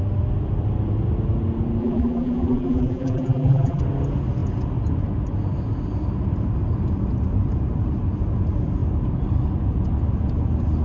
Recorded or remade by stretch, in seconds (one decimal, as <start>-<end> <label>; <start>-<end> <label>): 0.0-1.8 recorded; 1.8-3.8 remade; 3.8-10.8 recorded